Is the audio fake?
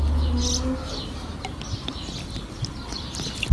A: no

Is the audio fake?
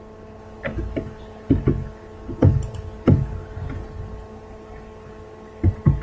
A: no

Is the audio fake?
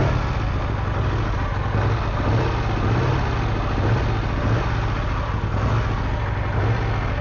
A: no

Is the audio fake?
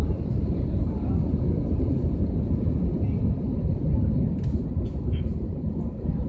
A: no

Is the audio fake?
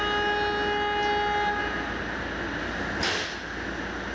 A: no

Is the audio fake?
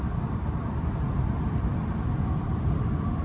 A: no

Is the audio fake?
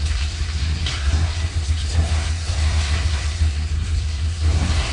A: yes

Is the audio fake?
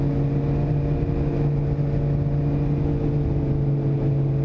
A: no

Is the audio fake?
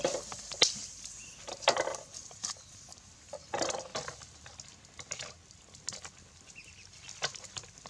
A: no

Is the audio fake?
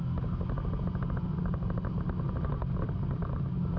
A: no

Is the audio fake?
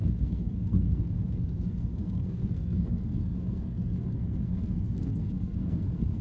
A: yes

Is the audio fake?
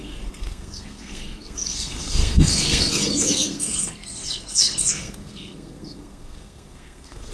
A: yes